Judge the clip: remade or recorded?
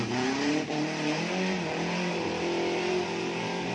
remade